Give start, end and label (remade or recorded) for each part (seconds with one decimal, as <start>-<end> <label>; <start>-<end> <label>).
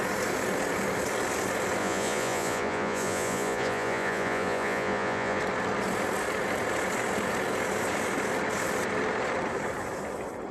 0.0-1.8 recorded; 1.8-5.4 remade; 5.4-10.5 recorded